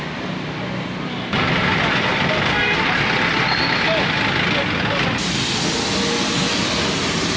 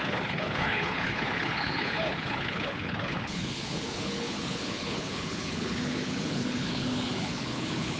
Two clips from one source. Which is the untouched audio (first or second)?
first